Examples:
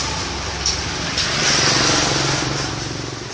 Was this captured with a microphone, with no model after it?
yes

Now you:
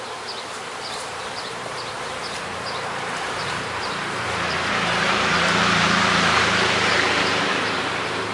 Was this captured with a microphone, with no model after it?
no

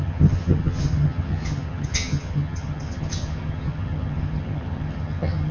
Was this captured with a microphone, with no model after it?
no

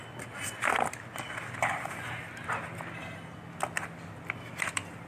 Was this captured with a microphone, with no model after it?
yes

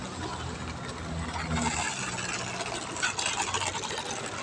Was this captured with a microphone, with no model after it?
yes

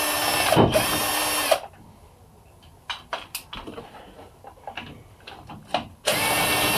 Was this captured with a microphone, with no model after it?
yes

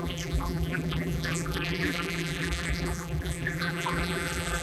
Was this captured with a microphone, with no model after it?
no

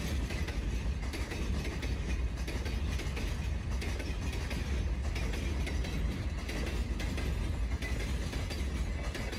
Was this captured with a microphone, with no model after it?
yes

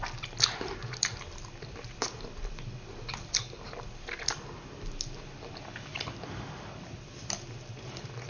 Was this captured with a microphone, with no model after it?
yes